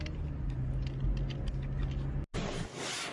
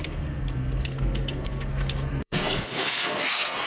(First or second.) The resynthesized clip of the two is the second